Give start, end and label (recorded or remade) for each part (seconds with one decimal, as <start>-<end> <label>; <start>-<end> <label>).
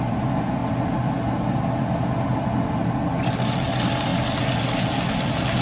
0.0-5.6 recorded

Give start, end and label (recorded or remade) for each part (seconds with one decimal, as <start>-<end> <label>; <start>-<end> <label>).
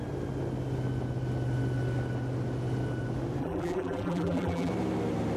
0.0-3.4 recorded; 3.4-4.7 remade; 4.7-5.4 recorded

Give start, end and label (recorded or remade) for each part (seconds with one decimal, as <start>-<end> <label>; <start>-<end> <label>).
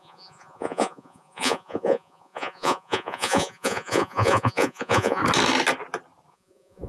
0.0-5.2 remade; 5.2-6.3 recorded; 6.3-6.9 remade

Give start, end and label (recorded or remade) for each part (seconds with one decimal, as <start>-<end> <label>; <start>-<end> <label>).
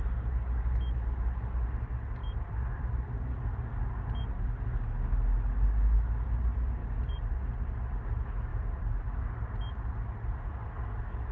0.0-2.2 recorded; 2.2-3.2 remade; 3.2-6.8 recorded; 6.8-7.7 remade; 7.7-8.5 recorded; 8.5-9.2 remade; 9.2-11.3 recorded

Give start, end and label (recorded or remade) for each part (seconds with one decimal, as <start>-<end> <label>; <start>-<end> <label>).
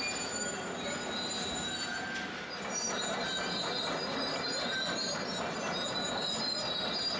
0.0-7.2 recorded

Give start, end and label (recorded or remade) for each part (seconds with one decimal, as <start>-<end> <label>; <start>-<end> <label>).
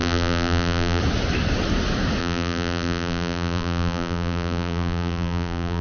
0.0-1.0 remade; 1.0-2.2 recorded; 2.2-5.8 remade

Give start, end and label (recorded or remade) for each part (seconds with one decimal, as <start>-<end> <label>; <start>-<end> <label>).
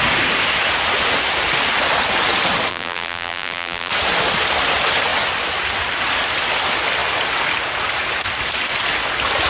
0.0-2.7 recorded; 2.7-3.9 remade; 3.9-9.5 recorded